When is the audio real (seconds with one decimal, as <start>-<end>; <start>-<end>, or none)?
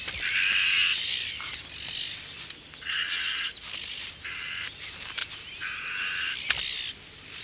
0.0-7.4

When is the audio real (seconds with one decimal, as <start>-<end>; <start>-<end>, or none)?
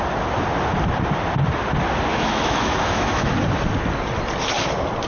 0.0-2.1; 3.3-5.1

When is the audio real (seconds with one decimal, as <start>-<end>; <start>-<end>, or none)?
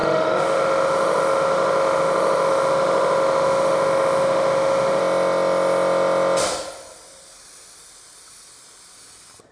5.0-9.5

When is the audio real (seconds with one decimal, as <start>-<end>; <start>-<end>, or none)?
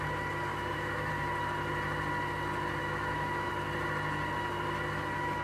0.0-0.5; 1.1-2.8; 3.5-5.4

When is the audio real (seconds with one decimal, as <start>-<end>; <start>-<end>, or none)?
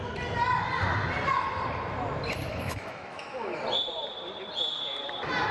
0.0-2.5; 3.6-5.5